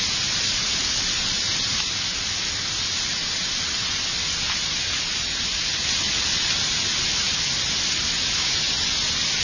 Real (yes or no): yes